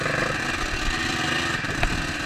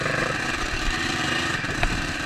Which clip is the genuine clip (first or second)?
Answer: first